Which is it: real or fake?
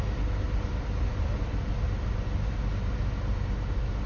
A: real